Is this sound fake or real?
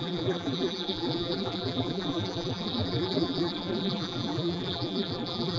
fake